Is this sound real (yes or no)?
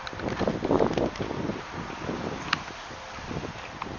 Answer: yes